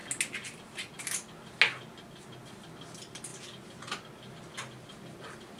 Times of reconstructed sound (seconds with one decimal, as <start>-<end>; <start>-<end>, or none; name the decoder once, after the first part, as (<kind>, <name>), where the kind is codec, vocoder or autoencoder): none